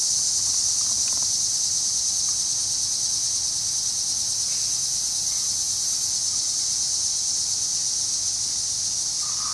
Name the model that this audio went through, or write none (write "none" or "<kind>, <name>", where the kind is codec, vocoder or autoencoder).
none